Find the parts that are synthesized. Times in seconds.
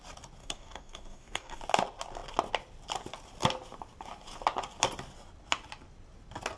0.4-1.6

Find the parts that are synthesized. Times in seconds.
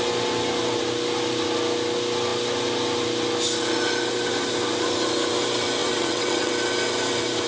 5.8-6.5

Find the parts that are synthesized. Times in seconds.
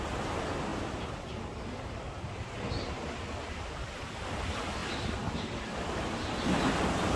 none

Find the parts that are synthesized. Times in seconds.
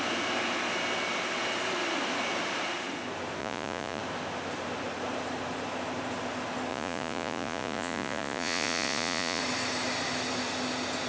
3.4-4.0; 6.7-9.4